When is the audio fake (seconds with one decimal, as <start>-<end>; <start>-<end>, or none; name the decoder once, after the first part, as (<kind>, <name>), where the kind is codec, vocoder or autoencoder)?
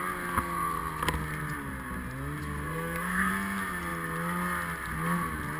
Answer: 2.4-3.3 (codec, SNAC)